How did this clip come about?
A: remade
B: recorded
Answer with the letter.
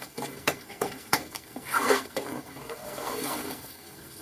A